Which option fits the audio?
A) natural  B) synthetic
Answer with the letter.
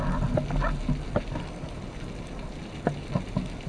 A